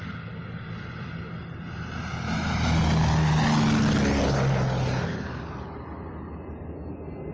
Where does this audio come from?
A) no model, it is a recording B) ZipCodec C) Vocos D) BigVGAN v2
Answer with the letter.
A